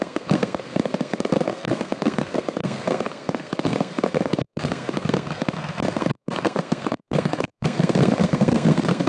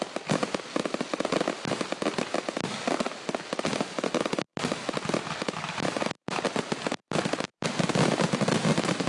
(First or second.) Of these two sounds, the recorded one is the second